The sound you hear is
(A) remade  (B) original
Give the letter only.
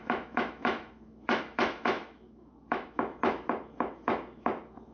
A